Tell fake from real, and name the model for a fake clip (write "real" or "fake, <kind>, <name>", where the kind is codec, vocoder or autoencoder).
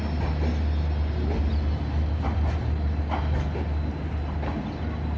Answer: real